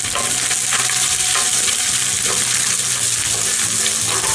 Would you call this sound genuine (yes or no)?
yes